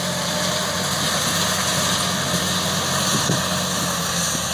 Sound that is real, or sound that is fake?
real